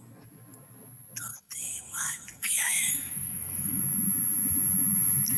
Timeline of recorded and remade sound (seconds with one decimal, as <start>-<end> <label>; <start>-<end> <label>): 0.0-1.3 recorded; 1.3-3.8 remade; 3.8-5.4 recorded